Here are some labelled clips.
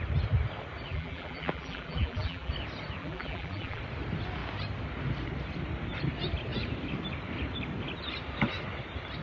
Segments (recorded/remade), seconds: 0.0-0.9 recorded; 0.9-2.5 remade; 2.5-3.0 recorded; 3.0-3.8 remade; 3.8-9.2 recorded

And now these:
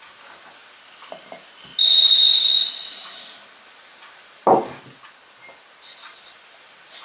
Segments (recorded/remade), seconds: 0.0-7.0 recorded

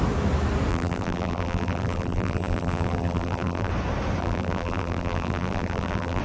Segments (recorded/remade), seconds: 0.0-0.7 recorded; 0.7-3.7 remade; 3.7-4.2 recorded; 4.2-6.2 remade

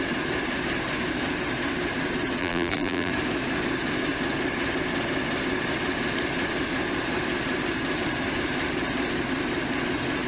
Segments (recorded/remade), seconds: 0.0-2.4 recorded; 2.4-3.1 remade; 3.1-10.3 recorded